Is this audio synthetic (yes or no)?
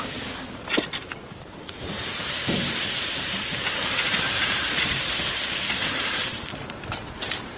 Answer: yes